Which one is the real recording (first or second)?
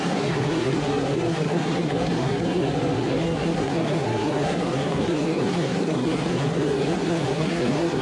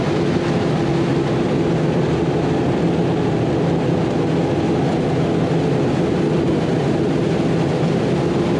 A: second